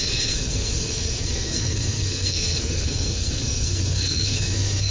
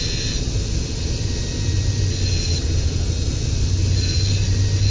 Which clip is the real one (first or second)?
second